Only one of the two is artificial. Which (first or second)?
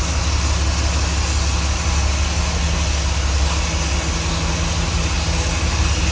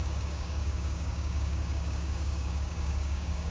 second